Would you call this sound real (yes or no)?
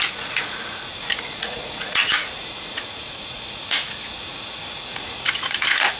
no